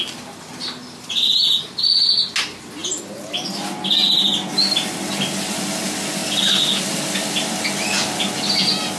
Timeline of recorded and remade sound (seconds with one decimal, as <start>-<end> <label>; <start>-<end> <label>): 0.0-9.0 recorded